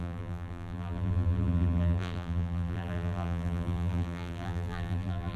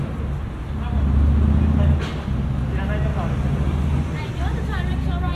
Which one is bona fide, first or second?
second